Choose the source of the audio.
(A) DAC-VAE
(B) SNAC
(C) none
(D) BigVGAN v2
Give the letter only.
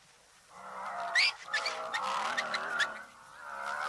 C